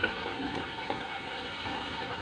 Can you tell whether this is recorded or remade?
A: remade